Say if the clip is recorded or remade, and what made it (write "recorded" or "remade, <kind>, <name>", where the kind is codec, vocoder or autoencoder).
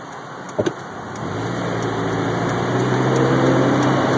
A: recorded